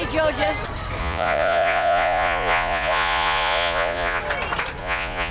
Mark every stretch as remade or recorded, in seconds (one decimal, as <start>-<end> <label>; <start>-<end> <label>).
0.0-1.0 recorded; 1.0-4.2 remade; 4.2-4.8 recorded; 4.8-5.3 remade